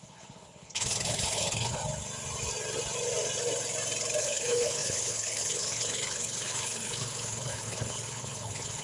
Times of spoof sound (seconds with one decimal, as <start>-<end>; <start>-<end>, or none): 0.0-1.8; 4.2-8.8